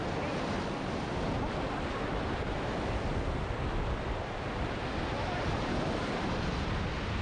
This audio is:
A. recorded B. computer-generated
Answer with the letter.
A